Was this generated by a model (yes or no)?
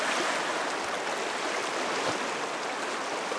no